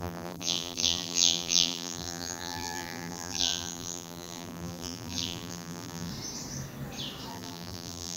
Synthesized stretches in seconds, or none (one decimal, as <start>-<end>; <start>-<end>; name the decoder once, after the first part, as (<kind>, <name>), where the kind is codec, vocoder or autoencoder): 0.0-6.1 (vocoder, BigVGAN v2); 7.3-8.2